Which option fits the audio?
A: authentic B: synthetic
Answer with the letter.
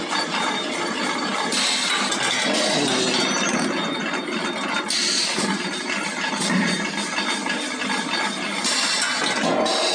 A